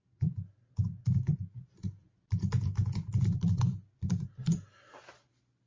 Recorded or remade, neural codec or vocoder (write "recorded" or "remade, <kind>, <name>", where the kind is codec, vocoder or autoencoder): recorded